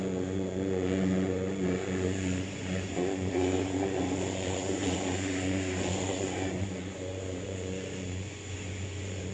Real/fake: fake